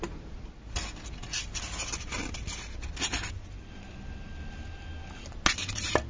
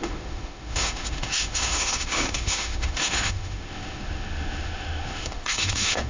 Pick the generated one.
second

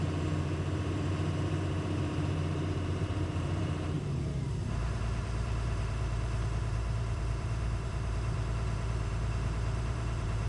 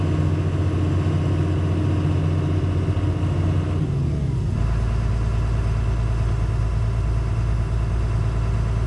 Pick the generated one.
first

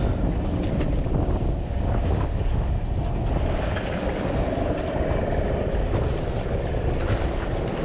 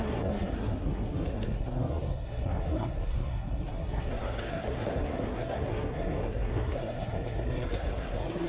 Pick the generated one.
second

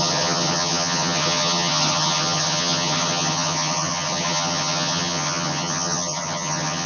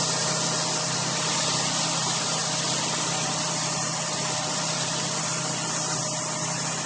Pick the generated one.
first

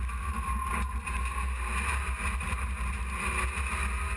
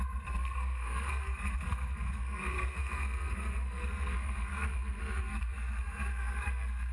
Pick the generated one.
second